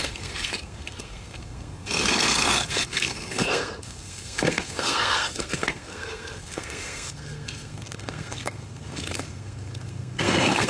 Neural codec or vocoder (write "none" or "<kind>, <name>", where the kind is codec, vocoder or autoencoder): codec, SNAC